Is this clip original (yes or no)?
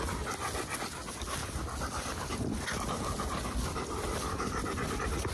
yes